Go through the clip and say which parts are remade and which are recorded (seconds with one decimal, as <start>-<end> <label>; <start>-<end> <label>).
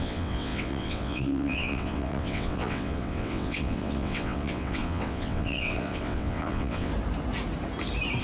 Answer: 0.0-6.9 remade; 6.9-8.2 recorded